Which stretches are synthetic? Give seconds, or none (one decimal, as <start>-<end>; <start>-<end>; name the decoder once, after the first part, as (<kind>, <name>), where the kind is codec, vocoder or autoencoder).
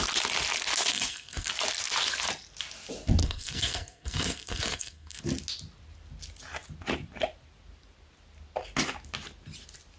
0.9-1.5 (codec, SNAC); 3.2-5.2